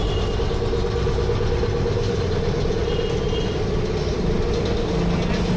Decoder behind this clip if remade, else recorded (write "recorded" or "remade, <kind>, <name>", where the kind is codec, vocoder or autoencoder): recorded